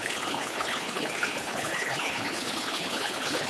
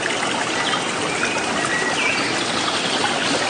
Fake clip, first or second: first